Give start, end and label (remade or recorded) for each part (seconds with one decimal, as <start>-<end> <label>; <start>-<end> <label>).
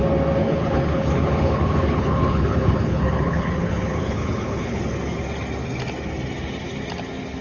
0.0-0.4 recorded; 0.4-4.8 remade; 4.8-7.4 recorded